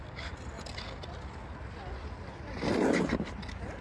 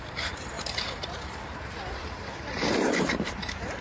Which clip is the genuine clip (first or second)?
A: first